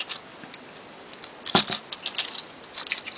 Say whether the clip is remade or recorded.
recorded